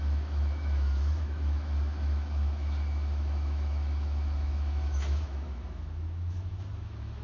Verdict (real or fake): fake